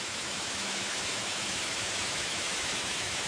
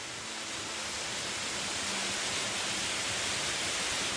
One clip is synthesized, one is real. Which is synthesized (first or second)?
first